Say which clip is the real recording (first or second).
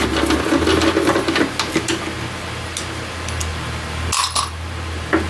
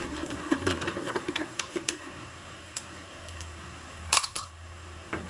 first